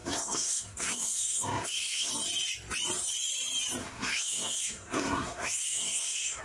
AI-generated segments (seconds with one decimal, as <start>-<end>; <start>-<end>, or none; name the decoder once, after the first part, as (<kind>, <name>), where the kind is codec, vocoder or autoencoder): 0.0-2.1 (codec, SNAC); 3.8-6.4